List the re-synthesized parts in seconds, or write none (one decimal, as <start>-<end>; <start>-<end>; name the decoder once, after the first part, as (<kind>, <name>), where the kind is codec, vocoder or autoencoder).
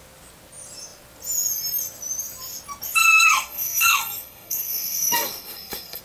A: 3.0-6.0 (codec, SNAC)